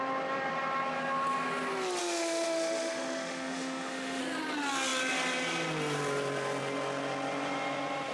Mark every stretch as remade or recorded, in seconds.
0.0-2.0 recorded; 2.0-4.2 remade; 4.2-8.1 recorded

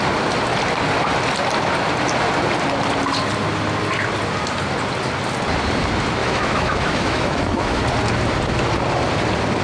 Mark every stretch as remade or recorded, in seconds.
0.0-6.2 recorded; 6.2-7.8 remade; 7.8-9.6 recorded

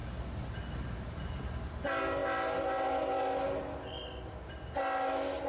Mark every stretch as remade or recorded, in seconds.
0.0-5.5 recorded